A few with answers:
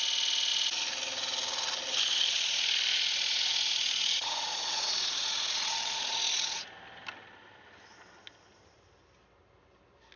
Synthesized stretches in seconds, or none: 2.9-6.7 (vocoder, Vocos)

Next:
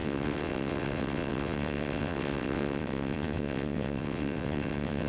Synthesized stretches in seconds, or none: 0.0-5.1 (vocoder, WaveNeXt)

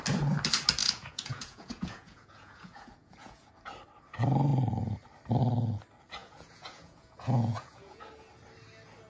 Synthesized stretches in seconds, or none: 0.8-3.5 (vocoder, Vocos); 6.2-8.0